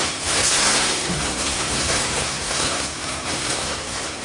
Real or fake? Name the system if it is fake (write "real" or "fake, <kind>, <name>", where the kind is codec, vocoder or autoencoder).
fake, codec, SNAC